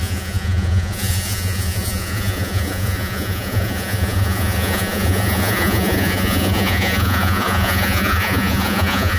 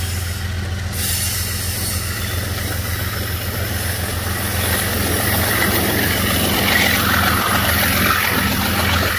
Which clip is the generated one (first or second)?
first